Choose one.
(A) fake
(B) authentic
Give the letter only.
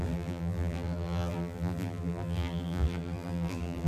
A